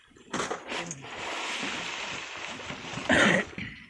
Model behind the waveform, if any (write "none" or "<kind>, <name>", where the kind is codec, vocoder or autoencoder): none